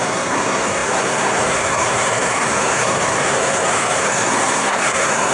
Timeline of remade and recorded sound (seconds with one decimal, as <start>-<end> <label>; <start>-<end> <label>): 0.0-5.3 remade